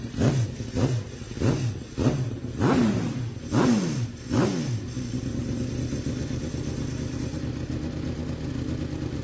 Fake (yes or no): no